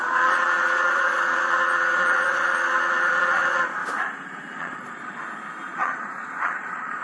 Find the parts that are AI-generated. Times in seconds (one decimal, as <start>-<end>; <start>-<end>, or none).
0.0-3.8; 4.6-5.2; 5.7-7.0